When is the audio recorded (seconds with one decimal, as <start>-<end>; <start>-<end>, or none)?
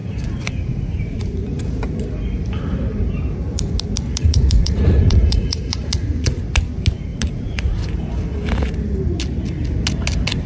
1.4-4.1; 6.4-7.1; 7.8-10.5